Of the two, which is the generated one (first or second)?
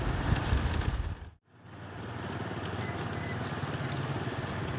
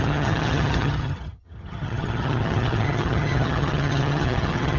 second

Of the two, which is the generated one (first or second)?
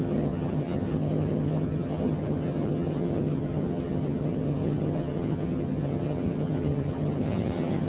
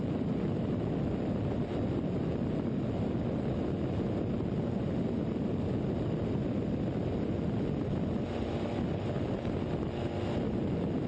first